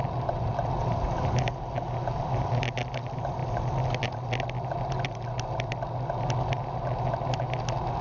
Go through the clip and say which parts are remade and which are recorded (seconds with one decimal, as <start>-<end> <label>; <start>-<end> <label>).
0.0-8.0 recorded

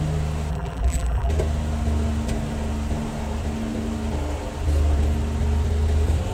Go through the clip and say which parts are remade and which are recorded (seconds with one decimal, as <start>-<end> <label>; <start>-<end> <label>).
0.0-0.5 recorded; 0.5-1.3 remade; 1.3-6.3 recorded